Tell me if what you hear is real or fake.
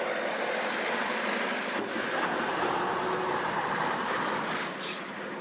real